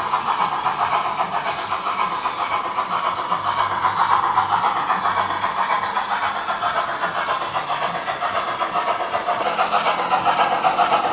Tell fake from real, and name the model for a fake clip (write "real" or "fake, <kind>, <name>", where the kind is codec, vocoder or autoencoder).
real